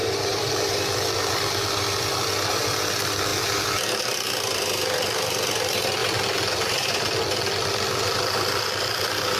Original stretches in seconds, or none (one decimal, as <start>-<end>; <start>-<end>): 0.8-9.4